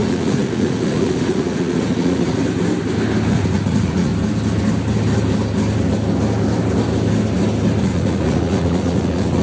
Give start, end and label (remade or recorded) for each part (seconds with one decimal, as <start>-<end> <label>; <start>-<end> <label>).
0.0-2.4 remade; 2.4-3.3 recorded; 3.3-4.1 remade; 4.1-7.8 recorded; 7.8-9.4 remade